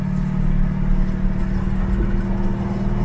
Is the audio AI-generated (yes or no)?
no